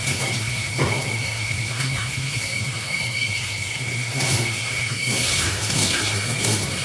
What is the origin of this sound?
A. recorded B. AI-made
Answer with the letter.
B